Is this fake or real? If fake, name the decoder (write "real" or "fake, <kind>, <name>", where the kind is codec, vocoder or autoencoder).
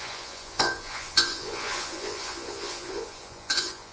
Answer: fake, vocoder, Vocos